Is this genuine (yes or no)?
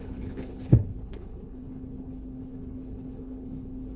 no